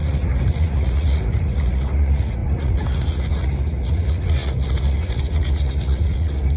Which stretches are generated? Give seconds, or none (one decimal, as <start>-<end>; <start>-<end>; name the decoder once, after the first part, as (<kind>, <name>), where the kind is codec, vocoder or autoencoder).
0.0-6.6 (vocoder, Vocos)